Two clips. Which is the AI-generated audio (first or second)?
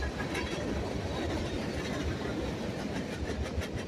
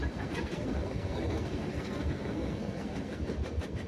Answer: second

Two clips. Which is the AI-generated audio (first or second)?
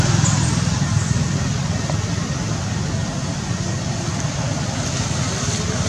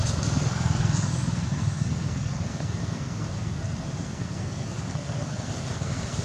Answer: second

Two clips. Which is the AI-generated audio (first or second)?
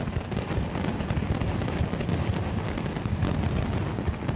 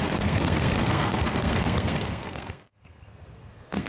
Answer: second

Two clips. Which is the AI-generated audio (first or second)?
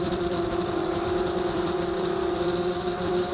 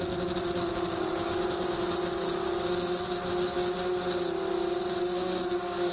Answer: first